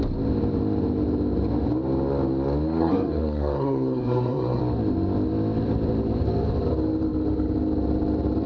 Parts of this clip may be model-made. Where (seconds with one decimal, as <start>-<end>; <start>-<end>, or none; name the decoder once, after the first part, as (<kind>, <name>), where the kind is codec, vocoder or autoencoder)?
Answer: 2.8-4.6 (codec, SNAC)